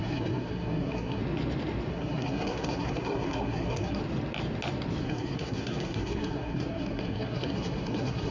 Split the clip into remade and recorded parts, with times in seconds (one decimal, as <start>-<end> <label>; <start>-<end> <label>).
0.0-1.2 remade; 1.2-1.9 recorded; 1.9-4.0 remade; 4.0-5.0 recorded; 5.0-8.3 remade